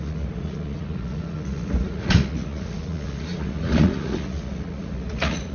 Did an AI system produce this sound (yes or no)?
yes